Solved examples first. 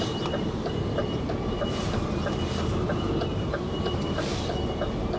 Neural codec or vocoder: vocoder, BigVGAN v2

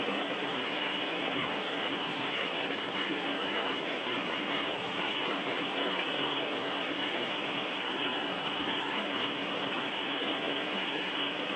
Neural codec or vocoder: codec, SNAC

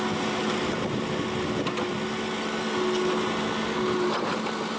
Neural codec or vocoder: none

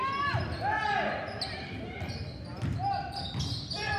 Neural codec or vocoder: none